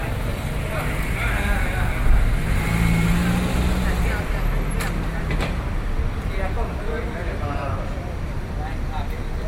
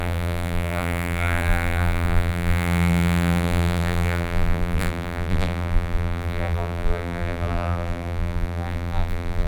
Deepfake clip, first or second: second